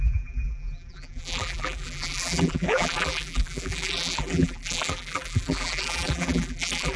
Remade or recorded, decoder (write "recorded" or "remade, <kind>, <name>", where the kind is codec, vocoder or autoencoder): remade, vocoder, BigVGAN v2